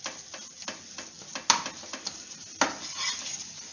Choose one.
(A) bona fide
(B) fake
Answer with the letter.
A